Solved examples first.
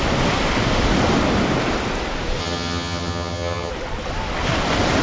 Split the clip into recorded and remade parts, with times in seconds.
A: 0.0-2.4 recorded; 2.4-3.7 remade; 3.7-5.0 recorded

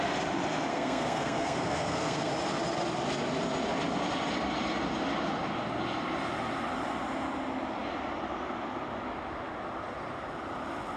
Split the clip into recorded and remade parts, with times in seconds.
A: 0.0-0.7 recorded; 0.7-2.3 remade; 2.3-11.0 recorded

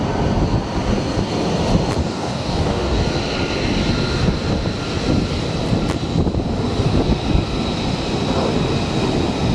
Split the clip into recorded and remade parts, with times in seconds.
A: 0.0-2.0 recorded; 2.0-3.0 remade; 3.0-9.5 recorded